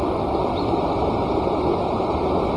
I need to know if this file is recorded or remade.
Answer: recorded